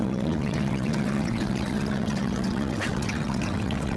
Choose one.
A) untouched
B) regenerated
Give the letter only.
B